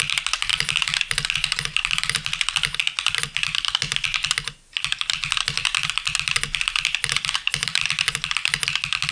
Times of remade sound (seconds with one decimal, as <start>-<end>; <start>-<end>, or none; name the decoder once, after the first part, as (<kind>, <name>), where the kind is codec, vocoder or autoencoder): none